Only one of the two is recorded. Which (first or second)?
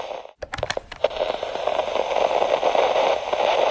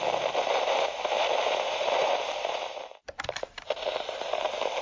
first